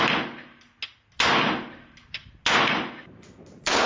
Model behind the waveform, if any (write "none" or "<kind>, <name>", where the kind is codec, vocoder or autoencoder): none